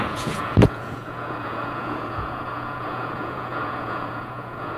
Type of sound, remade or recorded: remade